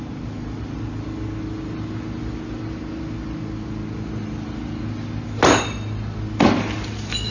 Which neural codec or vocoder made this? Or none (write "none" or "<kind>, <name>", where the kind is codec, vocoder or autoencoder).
none